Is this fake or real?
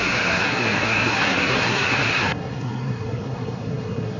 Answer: fake